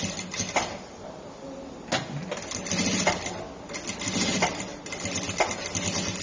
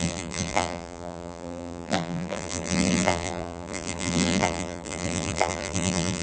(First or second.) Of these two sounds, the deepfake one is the second